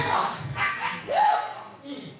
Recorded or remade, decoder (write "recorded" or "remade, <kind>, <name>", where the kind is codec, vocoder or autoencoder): remade, codec, SNAC